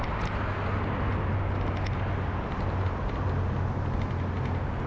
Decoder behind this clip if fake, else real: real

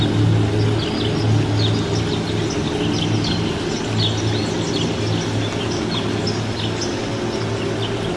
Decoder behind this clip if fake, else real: real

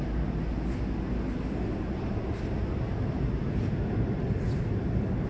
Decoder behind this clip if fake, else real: real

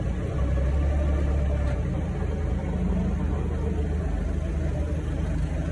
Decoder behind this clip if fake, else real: real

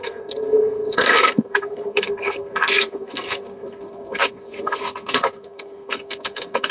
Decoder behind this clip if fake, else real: fake, codec, SNAC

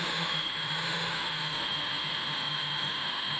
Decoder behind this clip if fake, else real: fake, autoencoder, DAC-VAE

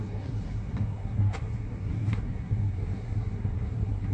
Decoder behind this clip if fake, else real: fake, codec, SNAC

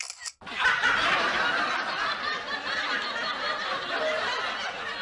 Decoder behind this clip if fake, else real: fake, vocoder, BigVGAN v2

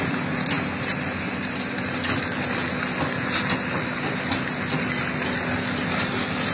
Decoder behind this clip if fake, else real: real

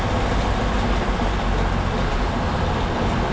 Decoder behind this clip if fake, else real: real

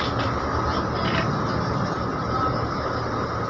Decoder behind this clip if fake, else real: real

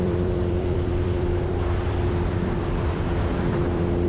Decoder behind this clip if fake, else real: fake, vocoder, BigVGAN v2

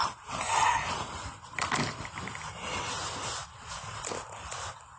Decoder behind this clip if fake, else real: real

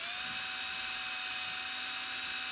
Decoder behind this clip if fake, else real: real